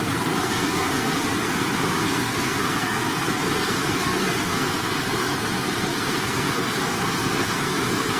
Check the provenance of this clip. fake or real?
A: fake